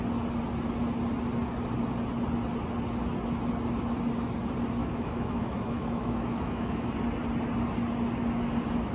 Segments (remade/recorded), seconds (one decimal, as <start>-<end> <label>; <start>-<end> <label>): 0.0-4.8 recorded; 4.8-6.9 remade; 6.9-8.9 recorded